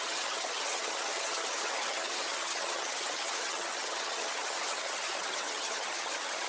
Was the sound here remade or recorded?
remade